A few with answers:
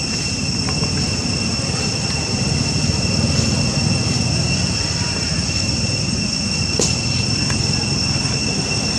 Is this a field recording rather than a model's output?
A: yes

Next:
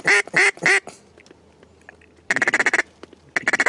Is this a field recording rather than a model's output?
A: yes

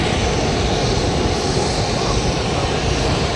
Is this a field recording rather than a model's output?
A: yes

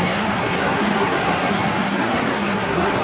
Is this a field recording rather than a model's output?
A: no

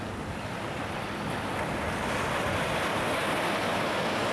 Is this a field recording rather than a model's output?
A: yes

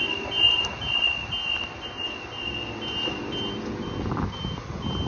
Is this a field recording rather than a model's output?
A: yes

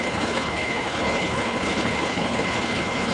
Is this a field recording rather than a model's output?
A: no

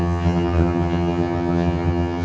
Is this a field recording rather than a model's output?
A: no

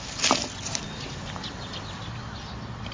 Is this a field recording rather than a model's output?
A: yes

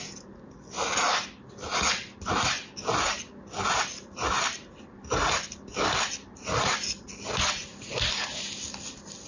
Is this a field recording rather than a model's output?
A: yes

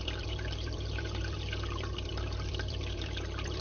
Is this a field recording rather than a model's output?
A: no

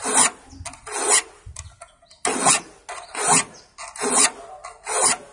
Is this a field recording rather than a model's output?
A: yes